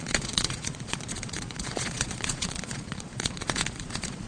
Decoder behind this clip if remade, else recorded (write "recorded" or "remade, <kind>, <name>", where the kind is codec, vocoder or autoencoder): remade, vocoder, Vocos